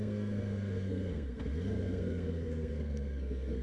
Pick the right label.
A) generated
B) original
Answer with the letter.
A